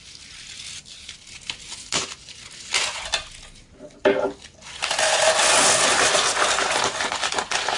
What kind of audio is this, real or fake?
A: real